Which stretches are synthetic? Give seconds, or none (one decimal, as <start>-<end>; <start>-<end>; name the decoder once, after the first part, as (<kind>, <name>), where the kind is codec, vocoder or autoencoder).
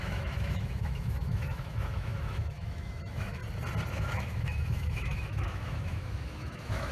0.0-3.4 (autoencoder, DAC-VAE); 3.9-6.9